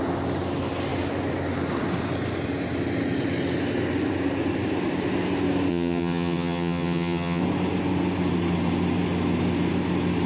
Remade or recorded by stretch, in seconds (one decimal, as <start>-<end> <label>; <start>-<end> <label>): 0.0-5.7 recorded; 5.7-7.4 remade; 7.4-10.3 recorded

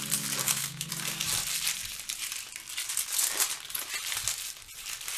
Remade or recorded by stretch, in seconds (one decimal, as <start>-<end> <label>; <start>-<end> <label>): 0.0-0.4 recorded; 0.4-0.9 remade; 0.9-5.2 recorded

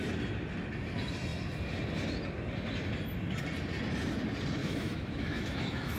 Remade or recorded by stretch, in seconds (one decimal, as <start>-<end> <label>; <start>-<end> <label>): 0.0-4.6 recorded; 4.6-6.0 remade

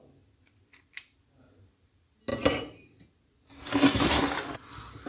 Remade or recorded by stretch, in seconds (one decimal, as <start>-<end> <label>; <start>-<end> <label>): 0.0-5.1 recorded

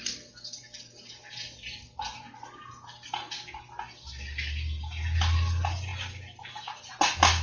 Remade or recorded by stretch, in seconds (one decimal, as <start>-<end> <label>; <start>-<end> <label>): 0.0-7.4 recorded

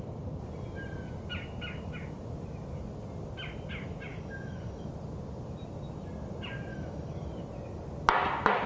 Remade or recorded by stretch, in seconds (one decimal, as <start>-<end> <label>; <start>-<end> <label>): 0.0-4.1 recorded; 4.1-4.9 remade; 4.9-6.7 recorded; 6.7-7.3 remade; 7.3-8.7 recorded

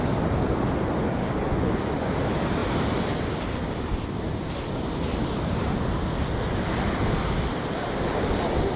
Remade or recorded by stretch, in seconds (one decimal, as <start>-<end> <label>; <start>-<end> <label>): 0.0-1.4 recorded; 1.4-2.1 remade; 2.1-8.8 recorded